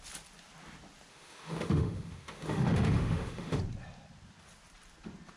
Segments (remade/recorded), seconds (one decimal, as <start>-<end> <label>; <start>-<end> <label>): 0.0-1.1 recorded; 1.1-3.6 remade; 3.6-5.4 recorded